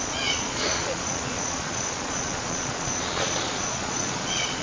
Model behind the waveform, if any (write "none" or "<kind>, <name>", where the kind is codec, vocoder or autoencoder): vocoder, Vocos